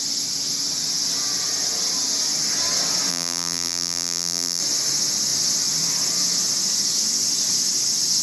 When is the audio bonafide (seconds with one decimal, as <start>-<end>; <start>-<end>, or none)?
0.0-3.1; 4.6-8.2